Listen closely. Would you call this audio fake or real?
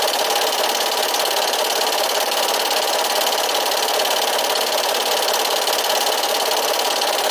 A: real